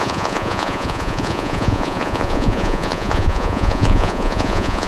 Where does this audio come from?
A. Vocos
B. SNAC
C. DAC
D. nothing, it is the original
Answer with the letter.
A